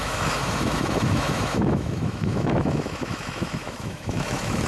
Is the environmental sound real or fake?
fake